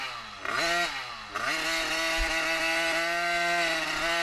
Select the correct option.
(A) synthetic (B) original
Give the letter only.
B